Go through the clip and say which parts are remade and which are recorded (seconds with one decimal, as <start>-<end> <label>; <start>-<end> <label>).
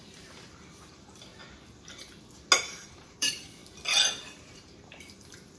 0.0-1.3 remade; 1.3-2.6 recorded; 2.6-3.6 remade; 3.6-4.3 recorded; 4.3-5.6 remade